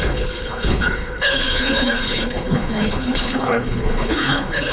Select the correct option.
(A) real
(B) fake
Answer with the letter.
B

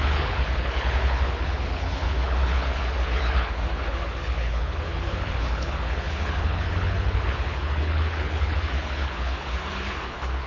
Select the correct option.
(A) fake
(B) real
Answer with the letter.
A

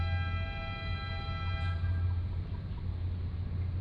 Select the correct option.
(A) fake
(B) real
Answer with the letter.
B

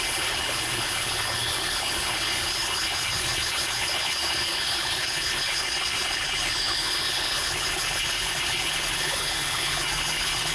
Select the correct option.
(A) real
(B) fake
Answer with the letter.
B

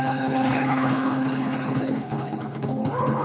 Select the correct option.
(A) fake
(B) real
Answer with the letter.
A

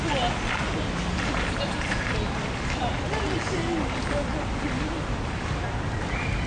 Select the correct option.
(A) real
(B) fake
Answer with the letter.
A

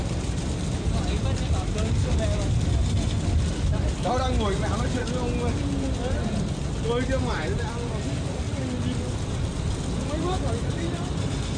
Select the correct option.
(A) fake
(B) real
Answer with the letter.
B